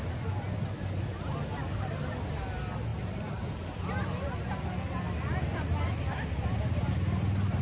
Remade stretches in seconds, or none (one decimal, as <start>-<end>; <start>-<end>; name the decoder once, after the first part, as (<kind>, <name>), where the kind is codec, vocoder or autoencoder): none

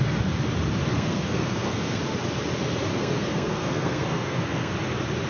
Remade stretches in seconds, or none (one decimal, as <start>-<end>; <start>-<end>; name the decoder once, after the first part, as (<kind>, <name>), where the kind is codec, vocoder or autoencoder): 0.9-2.0 (codec, SNAC); 2.9-4.7

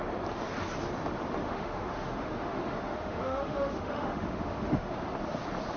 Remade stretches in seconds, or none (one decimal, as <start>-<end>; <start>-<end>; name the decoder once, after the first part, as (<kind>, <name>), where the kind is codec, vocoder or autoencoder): 1.4-4.9 (autoencoder, DAC-VAE)

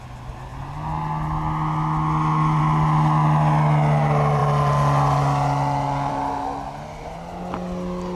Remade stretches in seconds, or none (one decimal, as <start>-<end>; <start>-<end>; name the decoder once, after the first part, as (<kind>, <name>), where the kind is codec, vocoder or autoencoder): none

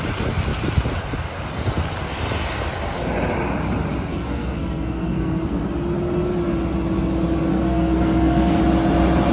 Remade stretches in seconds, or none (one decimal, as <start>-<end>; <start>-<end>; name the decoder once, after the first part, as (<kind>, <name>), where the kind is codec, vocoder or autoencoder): 4.1-5.6 (codec, SNAC); 7.5-8.6